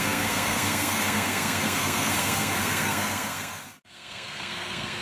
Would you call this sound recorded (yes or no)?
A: no